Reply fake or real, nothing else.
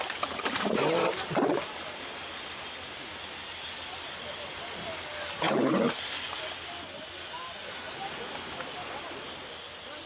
real